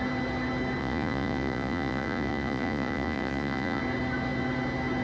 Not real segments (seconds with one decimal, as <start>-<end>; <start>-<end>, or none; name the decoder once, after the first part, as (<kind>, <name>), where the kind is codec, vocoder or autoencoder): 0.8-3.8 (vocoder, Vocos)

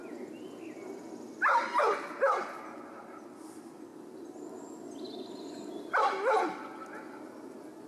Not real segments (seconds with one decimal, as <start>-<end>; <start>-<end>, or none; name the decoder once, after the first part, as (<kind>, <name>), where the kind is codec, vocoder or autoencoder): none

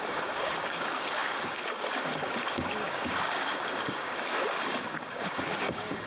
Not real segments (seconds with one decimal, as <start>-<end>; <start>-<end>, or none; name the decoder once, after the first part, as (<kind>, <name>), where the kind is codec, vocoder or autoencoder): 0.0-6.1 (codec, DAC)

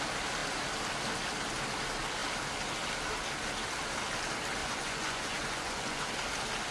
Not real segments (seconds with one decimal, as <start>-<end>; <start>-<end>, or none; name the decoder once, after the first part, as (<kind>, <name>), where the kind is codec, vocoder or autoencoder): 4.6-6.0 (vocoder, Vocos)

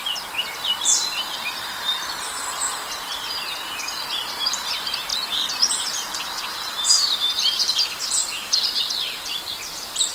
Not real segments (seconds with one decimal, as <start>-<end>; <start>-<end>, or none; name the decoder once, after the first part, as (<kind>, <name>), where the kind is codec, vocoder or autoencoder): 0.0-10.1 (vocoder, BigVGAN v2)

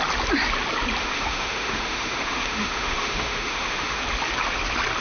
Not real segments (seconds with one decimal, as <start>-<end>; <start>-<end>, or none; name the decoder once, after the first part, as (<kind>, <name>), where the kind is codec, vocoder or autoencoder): 1.0-4.0 (autoencoder, DAC-VAE)

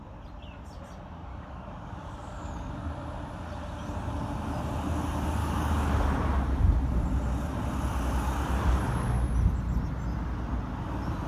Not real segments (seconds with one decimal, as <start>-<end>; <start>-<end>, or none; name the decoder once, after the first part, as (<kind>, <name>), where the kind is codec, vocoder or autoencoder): 1.3-2.7 (codec, DAC); 5.4-5.9

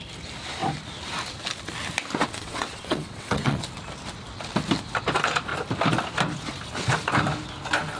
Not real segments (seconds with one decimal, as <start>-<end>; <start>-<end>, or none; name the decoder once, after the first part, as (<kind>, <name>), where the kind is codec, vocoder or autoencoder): 2.2-3.6 (vocoder, WaveNeXt)